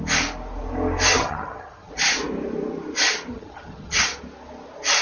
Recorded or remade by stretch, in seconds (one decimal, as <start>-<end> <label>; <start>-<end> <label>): 0.0-1.1 recorded; 1.1-1.9 remade; 1.9-3.3 recorded; 3.3-4.0 remade; 4.0-5.0 recorded